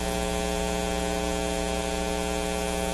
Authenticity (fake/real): real